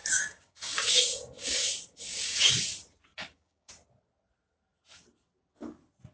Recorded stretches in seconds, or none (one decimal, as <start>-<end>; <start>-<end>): 2.5-3.1; 3.7-6.1